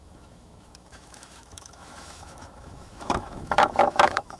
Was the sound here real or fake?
fake